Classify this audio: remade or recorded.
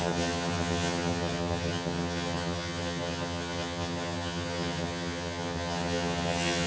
remade